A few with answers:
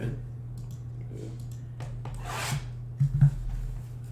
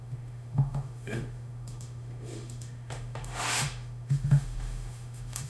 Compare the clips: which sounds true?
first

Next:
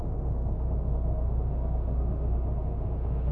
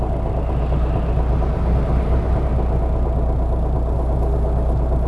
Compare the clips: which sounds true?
second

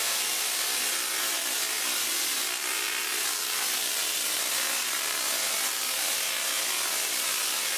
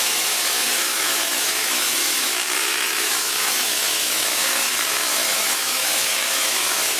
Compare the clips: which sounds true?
first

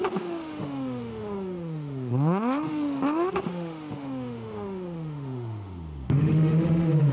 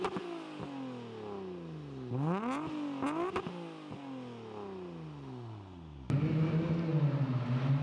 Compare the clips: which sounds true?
second